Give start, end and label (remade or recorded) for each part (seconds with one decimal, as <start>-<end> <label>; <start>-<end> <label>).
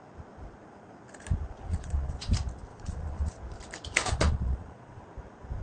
0.0-1.7 recorded; 1.7-2.3 remade; 2.3-2.7 recorded; 2.7-3.3 remade; 3.3-4.0 recorded; 4.0-5.0 remade; 5.0-5.6 recorded